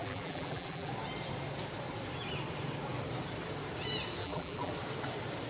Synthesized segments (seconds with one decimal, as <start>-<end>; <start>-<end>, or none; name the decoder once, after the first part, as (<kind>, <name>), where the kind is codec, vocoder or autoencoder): 0.0-0.9 (vocoder, BigVGAN v2); 4.2-4.7